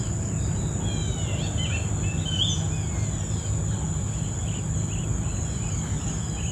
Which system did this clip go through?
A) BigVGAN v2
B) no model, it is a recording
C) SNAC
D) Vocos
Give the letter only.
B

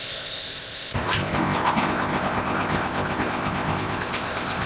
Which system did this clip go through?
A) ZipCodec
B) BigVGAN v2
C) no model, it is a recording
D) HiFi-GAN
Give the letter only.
A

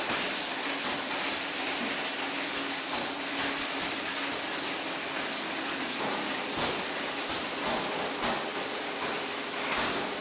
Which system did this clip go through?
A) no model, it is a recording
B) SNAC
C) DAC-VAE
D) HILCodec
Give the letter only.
A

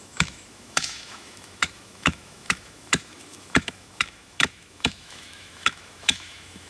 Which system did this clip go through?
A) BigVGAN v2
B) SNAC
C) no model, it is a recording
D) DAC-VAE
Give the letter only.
D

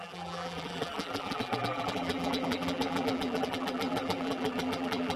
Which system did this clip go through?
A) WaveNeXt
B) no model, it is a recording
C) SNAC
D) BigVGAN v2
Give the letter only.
D